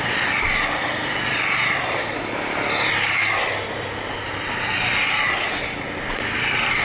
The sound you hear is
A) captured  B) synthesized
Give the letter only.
A